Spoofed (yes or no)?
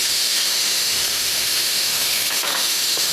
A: yes